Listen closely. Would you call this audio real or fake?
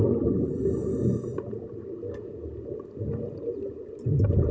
real